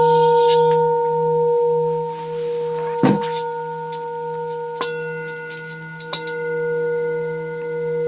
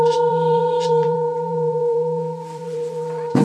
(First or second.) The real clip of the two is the first